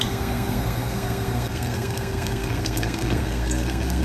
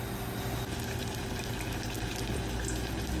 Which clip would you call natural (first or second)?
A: second